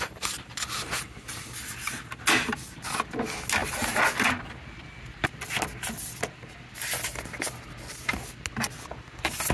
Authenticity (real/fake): real